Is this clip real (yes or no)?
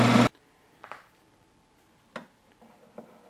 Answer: yes